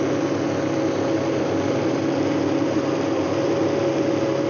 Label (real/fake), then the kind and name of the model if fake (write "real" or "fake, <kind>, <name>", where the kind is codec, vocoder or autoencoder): real